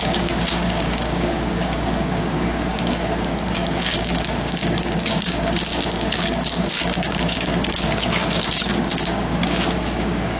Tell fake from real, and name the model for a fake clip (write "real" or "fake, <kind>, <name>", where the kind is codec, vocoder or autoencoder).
fake, codec, DAC